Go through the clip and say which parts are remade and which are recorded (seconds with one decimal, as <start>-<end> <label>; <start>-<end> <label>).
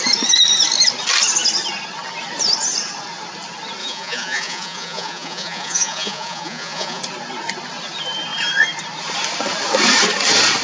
0.0-3.8 recorded; 3.8-7.0 remade; 7.0-10.6 recorded